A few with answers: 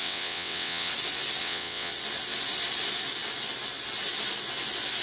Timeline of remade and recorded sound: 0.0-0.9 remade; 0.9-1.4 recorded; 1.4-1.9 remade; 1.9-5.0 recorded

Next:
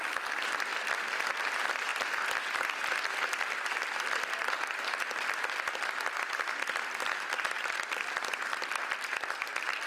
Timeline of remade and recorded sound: 0.0-0.7 remade; 0.7-1.3 recorded; 1.3-1.9 remade; 1.9-4.7 recorded; 4.7-9.9 remade

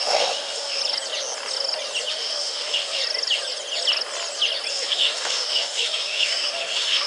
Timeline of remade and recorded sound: 0.0-0.8 remade; 0.8-2.1 recorded; 2.1-3.0 remade; 3.0-4.7 recorded; 4.7-7.1 remade

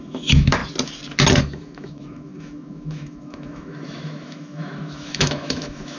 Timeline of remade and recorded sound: 0.0-0.6 remade; 0.6-1.4 recorded; 1.4-6.0 remade

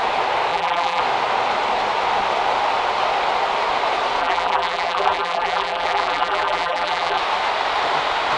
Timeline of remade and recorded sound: 0.0-0.5 recorded; 0.5-1.0 remade; 1.0-4.2 recorded; 4.2-7.2 remade; 7.2-8.4 recorded

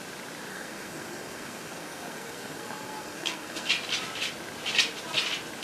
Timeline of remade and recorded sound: 0.0-0.5 recorded; 0.5-3.7 remade; 3.7-5.6 recorded

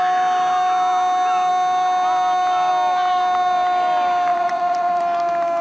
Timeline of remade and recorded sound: 0.0-4.3 recorded; 4.3-5.0 remade; 5.0-5.6 recorded